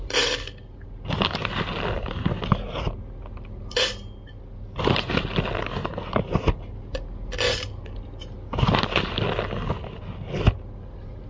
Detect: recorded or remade recorded